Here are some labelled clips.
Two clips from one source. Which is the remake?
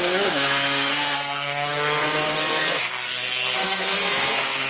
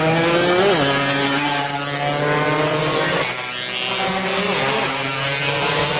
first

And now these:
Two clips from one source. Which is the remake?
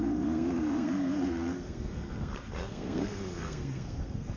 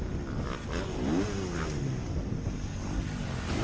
first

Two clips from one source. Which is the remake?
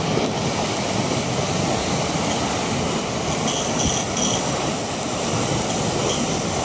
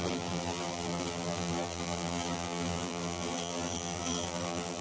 second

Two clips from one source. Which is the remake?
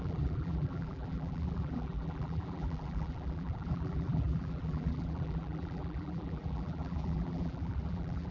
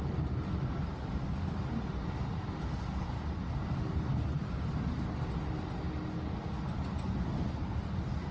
first